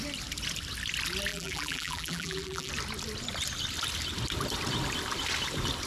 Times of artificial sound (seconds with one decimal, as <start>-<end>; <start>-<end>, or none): 1.3-2.7